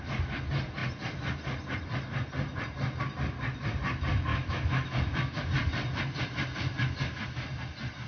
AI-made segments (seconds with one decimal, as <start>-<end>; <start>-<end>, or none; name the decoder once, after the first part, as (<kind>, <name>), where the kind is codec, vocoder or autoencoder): 4.3-5.4 (autoencoder, DAC-VAE)

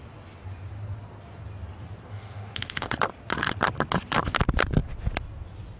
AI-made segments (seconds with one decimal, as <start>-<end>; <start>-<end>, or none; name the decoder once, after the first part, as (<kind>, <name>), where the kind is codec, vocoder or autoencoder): 2.1-2.9 (autoencoder, DAC-VAE)